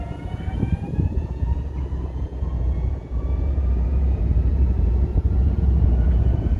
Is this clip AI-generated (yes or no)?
yes